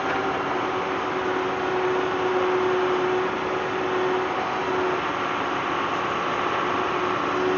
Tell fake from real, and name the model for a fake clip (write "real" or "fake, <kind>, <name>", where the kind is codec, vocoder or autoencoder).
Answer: real